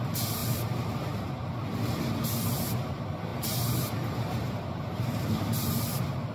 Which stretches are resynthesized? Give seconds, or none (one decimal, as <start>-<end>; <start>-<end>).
0.4-0.9; 3.3-5.8